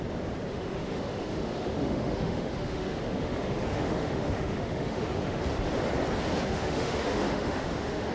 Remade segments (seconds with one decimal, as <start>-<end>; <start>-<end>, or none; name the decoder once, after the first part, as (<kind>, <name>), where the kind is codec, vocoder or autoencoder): 0.5-5.4 (autoencoder, DAC-VAE); 6.3-8.1